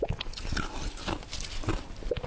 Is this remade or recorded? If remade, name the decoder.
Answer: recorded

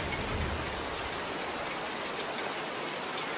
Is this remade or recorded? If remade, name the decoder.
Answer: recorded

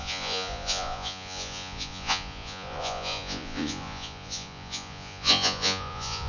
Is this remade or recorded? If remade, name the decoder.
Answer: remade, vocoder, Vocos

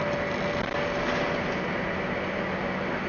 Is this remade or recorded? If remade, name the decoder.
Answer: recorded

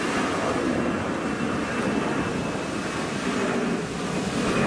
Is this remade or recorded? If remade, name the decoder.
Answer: recorded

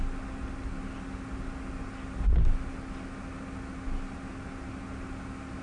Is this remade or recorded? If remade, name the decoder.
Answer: recorded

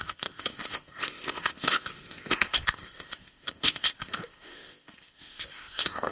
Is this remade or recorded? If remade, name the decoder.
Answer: remade, codec, ZipCodec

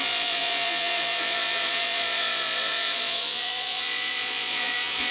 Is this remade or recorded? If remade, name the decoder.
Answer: remade, vocoder, Vocos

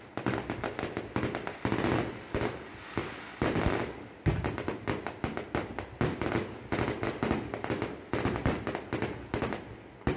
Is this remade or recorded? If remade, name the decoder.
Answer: recorded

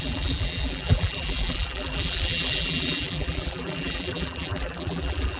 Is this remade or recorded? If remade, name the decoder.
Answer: remade, vocoder, BigVGAN v2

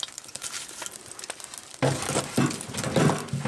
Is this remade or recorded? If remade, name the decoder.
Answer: recorded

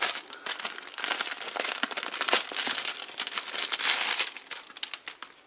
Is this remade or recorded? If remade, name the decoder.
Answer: recorded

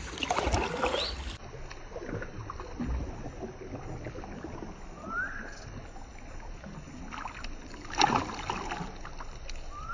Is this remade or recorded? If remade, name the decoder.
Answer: recorded